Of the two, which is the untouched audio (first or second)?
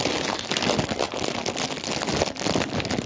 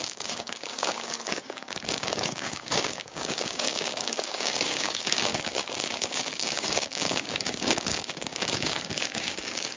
first